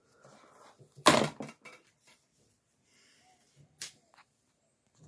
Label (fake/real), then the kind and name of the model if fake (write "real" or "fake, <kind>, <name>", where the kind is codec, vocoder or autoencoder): fake, vocoder, BigVGAN v2